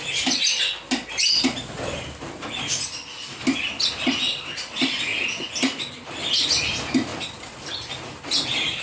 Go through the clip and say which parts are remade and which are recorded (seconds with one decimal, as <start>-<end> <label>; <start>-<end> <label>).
0.0-7.1 recorded; 7.1-8.2 remade; 8.2-8.8 recorded